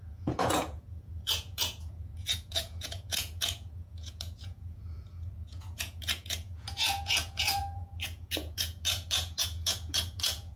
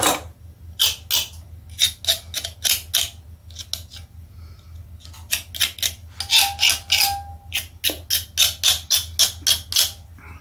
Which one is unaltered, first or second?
second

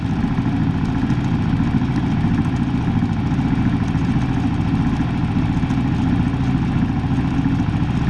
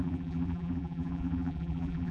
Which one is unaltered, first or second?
first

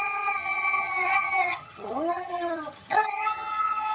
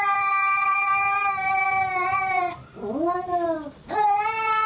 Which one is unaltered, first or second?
second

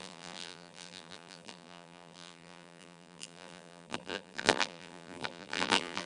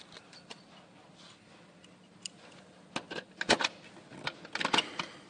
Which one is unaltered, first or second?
second